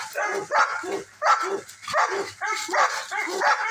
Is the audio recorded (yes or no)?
yes